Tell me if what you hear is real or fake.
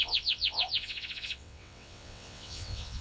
fake